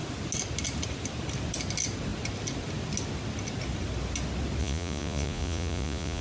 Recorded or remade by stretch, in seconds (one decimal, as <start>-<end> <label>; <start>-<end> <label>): 0.0-4.6 recorded; 4.6-6.2 remade